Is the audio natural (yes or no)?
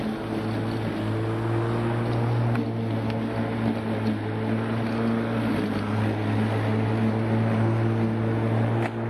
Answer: yes